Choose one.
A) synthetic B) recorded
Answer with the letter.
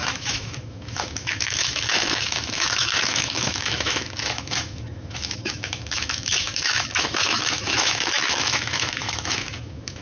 A